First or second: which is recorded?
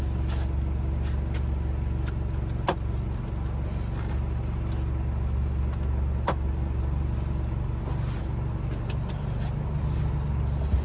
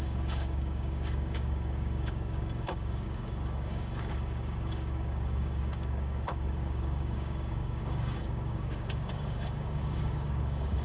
first